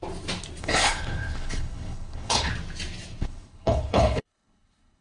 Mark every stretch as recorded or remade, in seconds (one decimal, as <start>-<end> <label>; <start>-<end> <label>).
0.0-0.6 recorded; 0.6-2.5 remade; 2.5-3.2 recorded; 3.2-5.0 remade